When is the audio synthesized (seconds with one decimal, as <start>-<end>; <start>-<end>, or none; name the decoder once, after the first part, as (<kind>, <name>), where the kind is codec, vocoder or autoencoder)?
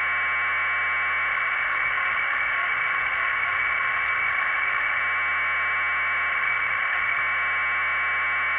1.3-5.0 (autoencoder, DAC-VAE); 6.3-7.2